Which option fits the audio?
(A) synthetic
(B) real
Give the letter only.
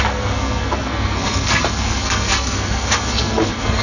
A